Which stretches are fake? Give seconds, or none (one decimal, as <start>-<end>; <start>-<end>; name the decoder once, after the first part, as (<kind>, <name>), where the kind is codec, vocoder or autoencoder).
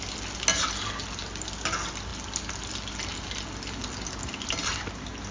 none